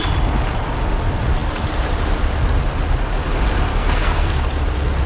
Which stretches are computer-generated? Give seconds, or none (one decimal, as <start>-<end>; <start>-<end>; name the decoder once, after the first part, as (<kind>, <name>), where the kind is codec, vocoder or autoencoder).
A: 3.7-4.4 (codec, SNAC)